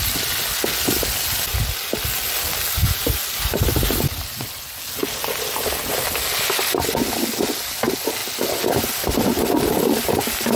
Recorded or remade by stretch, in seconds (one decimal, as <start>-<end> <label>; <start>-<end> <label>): 0.0-10.6 recorded